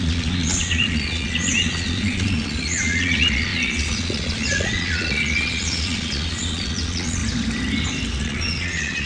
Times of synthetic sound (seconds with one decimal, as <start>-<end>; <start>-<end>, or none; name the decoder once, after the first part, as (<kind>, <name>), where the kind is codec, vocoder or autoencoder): 0.0-7.2 (vocoder, Vocos); 8.2-9.1